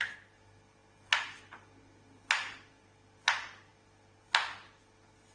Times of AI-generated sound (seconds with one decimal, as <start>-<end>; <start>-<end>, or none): none